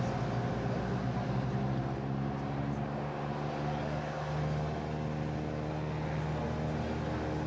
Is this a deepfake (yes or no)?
no